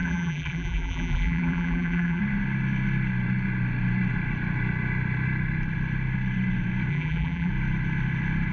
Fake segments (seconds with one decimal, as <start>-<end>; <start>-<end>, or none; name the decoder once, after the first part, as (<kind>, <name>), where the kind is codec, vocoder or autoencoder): 0.0-2.2 (vocoder, BigVGAN v2); 6.9-7.5

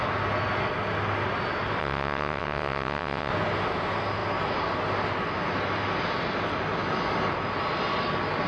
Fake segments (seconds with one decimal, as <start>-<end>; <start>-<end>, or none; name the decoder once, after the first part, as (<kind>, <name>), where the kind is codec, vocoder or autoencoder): 1.8-3.3 (vocoder, WaveNeXt)

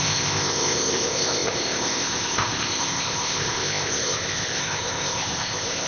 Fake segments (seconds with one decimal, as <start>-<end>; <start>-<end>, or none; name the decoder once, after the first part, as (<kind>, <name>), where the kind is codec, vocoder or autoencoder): 0.0-5.9 (codec, ZipCodec)

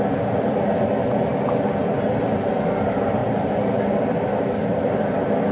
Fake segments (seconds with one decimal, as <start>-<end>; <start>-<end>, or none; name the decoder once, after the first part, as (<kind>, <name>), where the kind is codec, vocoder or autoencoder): none

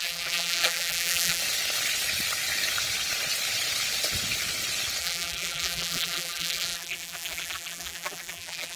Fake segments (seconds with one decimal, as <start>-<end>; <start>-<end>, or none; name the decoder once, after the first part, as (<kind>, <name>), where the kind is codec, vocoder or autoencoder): 0.0-1.4 (vocoder, BigVGAN v2); 5.0-8.8

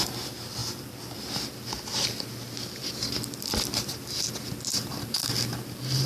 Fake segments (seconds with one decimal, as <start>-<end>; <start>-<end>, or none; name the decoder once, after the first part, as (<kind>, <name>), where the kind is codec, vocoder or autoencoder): none